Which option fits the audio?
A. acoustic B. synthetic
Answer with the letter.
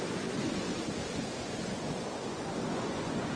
B